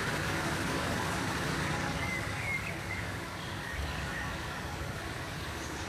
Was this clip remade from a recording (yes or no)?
yes